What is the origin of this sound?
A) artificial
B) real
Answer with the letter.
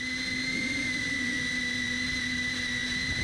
B